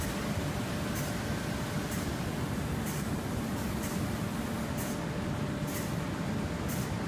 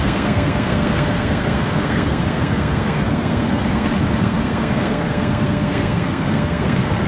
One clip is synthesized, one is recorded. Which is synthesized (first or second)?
second